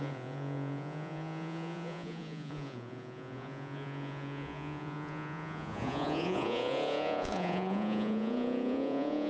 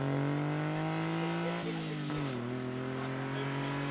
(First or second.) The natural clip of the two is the second